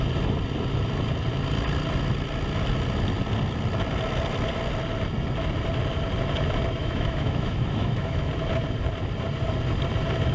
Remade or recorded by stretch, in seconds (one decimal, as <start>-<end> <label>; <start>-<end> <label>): 0.0-6.8 recorded; 6.8-8.3 remade; 8.3-10.3 recorded